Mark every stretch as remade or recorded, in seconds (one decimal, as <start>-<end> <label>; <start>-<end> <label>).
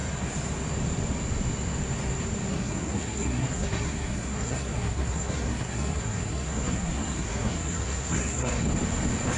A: 0.0-2.5 recorded; 2.5-8.6 remade; 8.6-9.4 recorded